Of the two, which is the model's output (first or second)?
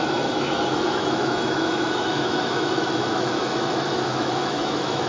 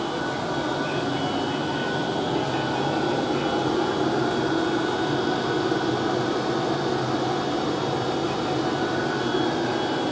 first